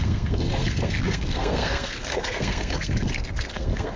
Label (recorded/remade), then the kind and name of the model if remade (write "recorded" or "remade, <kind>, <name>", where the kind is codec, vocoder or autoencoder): remade, codec, SNAC